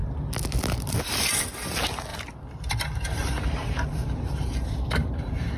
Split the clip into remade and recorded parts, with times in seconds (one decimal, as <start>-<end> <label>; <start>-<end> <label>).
0.0-2.1 recorded; 2.1-5.6 remade